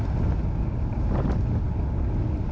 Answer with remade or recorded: recorded